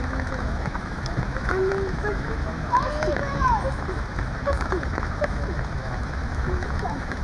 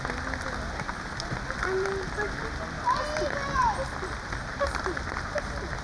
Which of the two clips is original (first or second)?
second